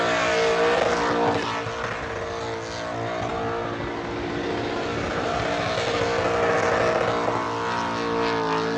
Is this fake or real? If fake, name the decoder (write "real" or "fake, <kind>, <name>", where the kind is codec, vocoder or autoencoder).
real